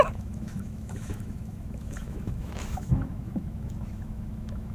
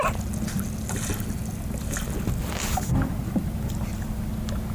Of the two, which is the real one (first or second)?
second